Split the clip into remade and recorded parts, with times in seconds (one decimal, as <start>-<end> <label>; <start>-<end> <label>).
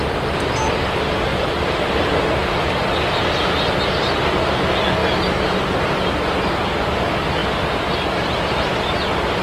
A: 0.0-1.3 recorded; 1.3-2.8 remade; 2.8-5.0 recorded; 5.0-5.6 remade; 5.6-9.4 recorded